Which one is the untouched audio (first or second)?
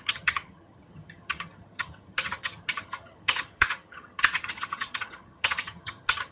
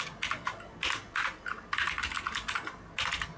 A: second